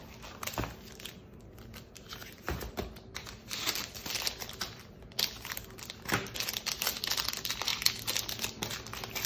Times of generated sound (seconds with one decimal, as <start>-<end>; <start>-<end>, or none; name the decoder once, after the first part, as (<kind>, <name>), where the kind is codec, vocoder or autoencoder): none